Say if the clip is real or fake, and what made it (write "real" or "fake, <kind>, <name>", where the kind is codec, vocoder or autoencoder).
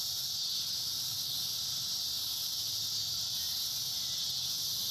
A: real